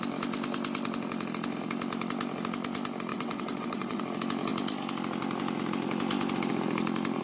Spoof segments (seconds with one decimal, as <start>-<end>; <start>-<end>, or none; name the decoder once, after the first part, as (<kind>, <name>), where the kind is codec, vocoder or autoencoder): 3.1-4.0 (vocoder, WaveNeXt)